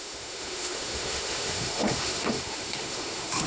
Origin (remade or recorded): remade